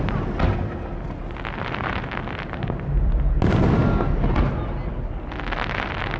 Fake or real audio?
real